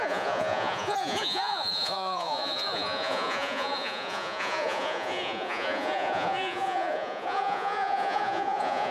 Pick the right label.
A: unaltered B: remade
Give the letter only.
B